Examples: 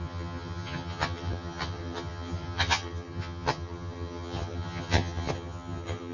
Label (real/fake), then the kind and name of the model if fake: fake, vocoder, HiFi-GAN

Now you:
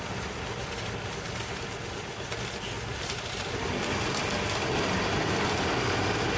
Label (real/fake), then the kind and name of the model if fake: real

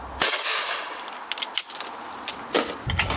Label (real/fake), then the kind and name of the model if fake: real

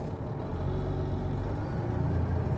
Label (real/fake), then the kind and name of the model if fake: real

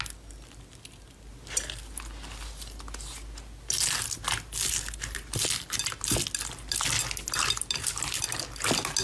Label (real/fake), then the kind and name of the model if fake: real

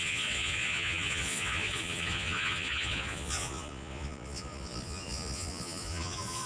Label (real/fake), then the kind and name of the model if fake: fake, vocoder, Vocos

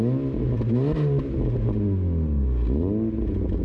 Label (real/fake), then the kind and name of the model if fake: real